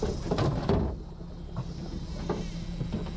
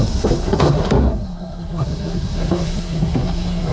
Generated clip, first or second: second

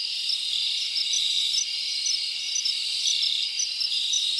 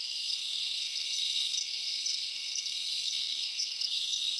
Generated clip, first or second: second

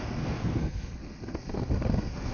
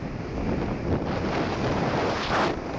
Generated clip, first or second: first